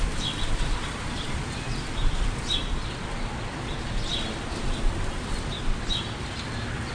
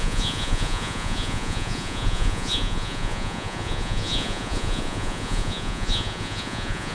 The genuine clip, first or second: first